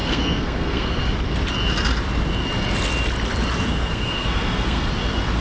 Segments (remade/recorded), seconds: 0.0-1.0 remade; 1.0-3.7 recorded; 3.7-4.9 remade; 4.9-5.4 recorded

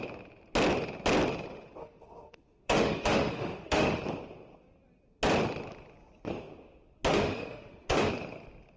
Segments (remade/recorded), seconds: 0.0-1.8 recorded; 1.8-4.0 remade; 4.0-7.1 recorded; 7.1-8.1 remade; 8.1-8.8 recorded

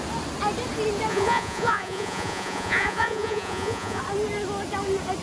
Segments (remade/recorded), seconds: 0.0-1.1 recorded; 1.1-4.0 remade; 4.0-5.2 recorded

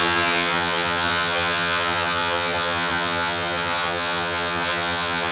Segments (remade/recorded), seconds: 0.0-5.3 remade

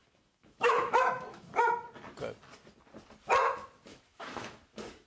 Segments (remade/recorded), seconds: 0.0-1.7 remade; 1.7-3.9 recorded; 3.9-5.1 remade

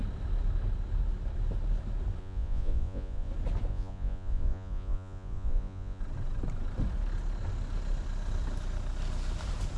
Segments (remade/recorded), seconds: 0.0-2.2 recorded; 2.2-3.3 remade; 3.3-3.7 recorded; 3.7-6.0 remade; 6.0-9.8 recorded

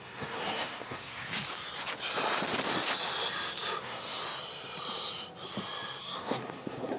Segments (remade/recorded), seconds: 0.0-1.3 remade; 1.3-3.8 recorded; 3.8-4.2 remade; 4.2-6.0 recorded; 6.0-7.0 remade

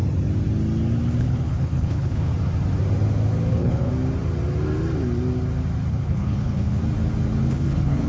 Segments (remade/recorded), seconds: 0.0-1.2 recorded; 1.2-2.3 remade; 2.3-3.5 recorded; 3.5-3.9 remade; 3.9-5.9 recorded; 5.9-6.8 remade; 6.8-7.5 recorded; 7.5-8.1 remade